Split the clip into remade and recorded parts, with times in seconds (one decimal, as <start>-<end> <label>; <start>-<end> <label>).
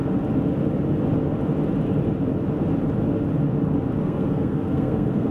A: 0.0-4.0 recorded; 4.0-5.3 remade